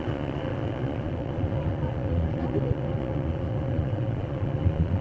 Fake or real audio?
fake